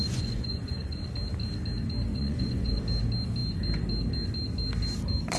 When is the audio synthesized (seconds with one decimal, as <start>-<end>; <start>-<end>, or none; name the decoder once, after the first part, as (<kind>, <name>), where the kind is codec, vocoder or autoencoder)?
0.0-1.1 (vocoder, Vocos); 2.1-2.8